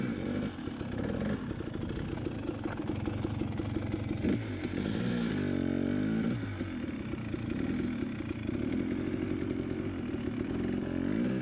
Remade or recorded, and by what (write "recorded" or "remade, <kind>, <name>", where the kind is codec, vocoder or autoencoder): recorded